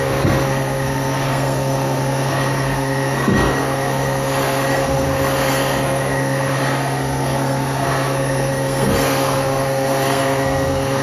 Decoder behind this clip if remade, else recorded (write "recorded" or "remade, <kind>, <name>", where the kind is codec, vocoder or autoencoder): remade, codec, SNAC